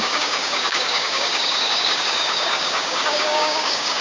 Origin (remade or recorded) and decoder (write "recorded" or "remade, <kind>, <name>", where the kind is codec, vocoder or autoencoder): remade, codec, DAC